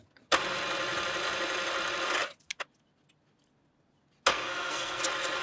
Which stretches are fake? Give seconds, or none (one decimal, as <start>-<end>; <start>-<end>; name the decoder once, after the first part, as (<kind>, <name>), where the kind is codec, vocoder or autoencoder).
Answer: 4.3-5.0 (codec, SNAC)